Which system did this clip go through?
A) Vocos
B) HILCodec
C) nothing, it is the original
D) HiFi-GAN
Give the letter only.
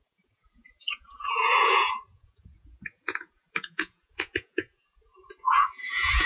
A